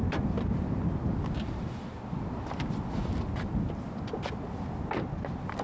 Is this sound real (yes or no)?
yes